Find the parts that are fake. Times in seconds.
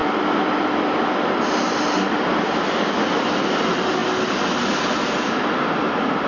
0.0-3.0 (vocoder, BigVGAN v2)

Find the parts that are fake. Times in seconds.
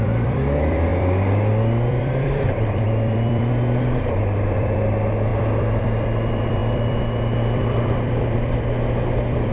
0.0-9.5 (vocoder, BigVGAN v2)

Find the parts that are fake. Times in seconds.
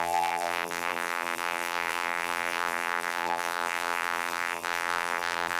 0.0-5.6 (vocoder, BigVGAN v2)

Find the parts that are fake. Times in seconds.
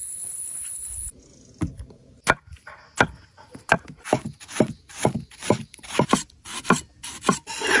5.4-6.1 (vocoder, BigVGAN v2)